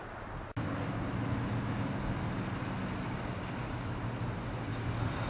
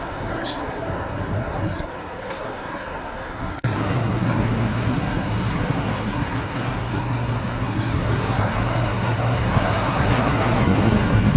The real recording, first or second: first